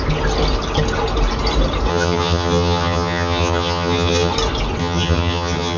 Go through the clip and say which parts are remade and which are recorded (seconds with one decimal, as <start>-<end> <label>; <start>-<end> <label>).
0.0-1.9 recorded; 1.9-4.3 remade; 4.3-4.8 recorded; 4.8-5.8 remade